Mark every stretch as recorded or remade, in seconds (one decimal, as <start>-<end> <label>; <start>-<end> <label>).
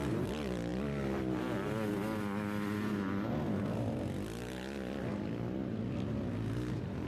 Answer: 0.0-7.1 recorded